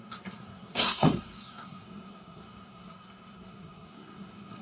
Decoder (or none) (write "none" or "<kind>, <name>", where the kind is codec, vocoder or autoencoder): codec, SNAC